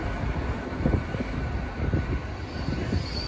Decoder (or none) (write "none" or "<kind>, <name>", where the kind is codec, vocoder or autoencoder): none